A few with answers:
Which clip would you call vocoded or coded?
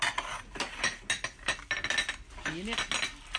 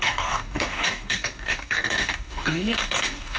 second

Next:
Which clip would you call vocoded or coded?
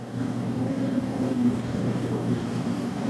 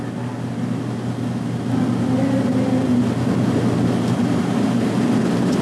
first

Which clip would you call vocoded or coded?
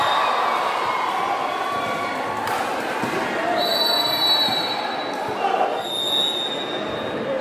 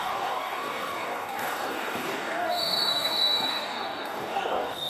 second